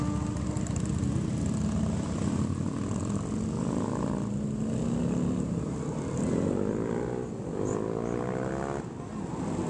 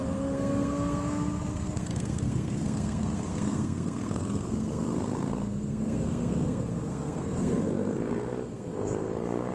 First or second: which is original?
first